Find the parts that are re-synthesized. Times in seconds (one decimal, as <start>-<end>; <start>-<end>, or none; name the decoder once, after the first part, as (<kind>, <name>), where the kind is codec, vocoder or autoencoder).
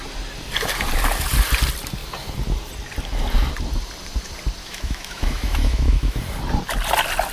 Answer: 4.6-6.2 (autoencoder, DAC-VAE)